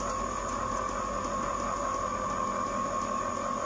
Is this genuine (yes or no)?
yes